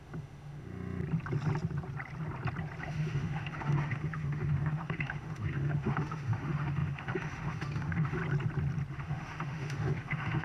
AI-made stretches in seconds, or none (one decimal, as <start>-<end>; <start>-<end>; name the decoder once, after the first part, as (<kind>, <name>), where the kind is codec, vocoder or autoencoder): 0.0-1.0 (autoencoder, DAC-VAE); 2.8-8.2; 8.9-10.4